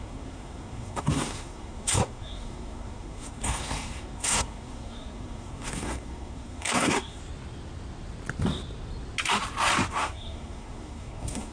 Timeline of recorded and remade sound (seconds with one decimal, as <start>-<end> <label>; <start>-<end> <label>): 0.0-7.2 remade; 7.2-9.9 recorded; 9.9-11.5 remade